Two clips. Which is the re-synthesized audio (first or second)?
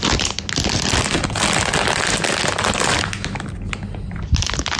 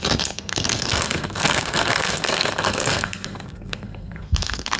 second